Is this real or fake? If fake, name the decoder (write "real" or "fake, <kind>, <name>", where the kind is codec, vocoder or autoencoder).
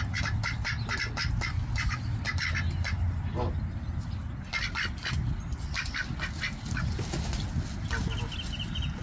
real